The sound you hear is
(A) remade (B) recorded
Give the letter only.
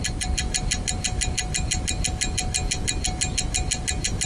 B